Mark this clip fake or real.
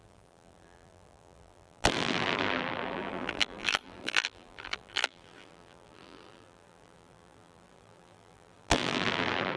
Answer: fake